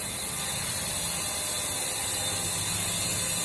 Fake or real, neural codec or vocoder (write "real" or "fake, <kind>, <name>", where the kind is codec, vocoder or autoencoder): real